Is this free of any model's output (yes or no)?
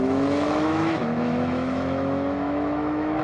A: no